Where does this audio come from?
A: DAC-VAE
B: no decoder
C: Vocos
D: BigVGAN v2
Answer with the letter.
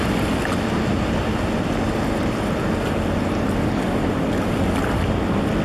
B